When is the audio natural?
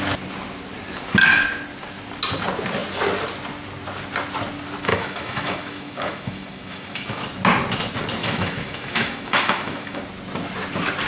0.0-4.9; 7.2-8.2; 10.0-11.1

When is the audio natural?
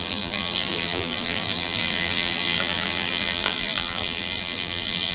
none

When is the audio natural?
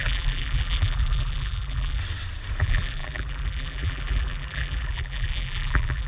2.0-2.6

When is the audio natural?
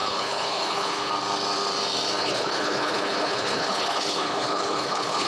1.1-2.2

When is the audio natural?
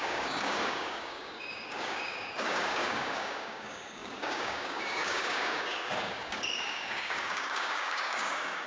none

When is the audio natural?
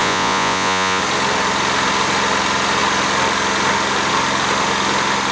1.0-5.3